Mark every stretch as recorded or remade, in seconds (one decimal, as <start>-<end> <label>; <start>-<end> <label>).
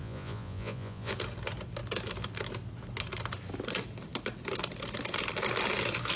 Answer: 0.0-1.1 remade; 1.1-6.2 recorded